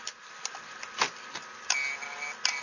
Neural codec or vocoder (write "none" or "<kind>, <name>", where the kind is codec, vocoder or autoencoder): none